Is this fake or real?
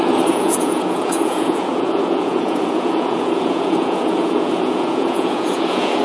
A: fake